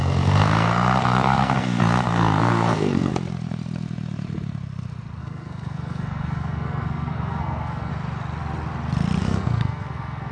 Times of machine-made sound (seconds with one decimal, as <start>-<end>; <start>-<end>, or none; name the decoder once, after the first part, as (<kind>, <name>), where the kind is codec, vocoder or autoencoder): 0.0-3.1 (codec, SNAC); 5.2-7.9; 9.2-10.3